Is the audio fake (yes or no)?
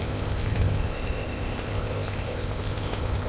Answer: yes